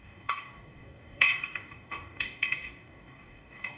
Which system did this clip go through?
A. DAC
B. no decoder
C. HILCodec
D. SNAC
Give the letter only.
A